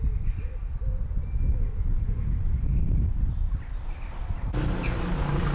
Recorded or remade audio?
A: recorded